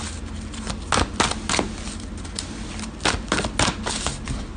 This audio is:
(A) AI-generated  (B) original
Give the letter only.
B